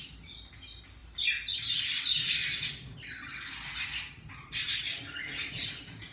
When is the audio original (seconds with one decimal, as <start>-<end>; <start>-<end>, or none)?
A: 0.0-6.1